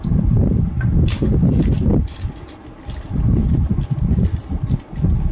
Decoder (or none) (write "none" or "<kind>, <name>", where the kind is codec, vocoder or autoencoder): none